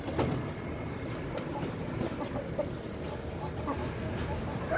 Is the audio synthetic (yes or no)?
no